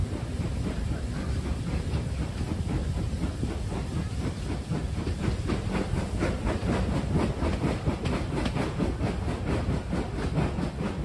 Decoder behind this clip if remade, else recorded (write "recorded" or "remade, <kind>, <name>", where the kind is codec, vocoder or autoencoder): recorded